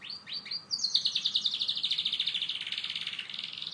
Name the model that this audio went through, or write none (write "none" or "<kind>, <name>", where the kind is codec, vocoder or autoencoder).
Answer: none